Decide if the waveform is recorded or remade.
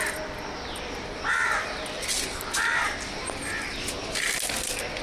recorded